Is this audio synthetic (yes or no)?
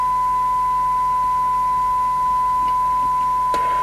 no